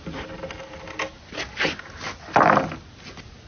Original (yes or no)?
yes